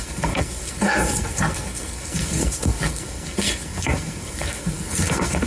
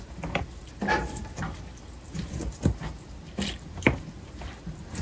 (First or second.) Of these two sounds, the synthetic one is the first